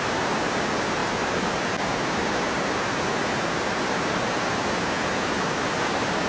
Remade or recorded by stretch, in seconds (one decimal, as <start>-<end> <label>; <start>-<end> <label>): 0.0-6.3 recorded